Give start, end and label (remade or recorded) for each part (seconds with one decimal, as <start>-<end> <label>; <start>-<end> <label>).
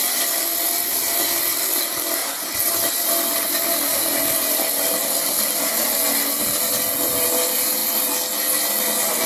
0.0-9.3 recorded